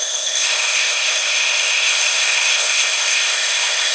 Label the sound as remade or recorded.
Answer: remade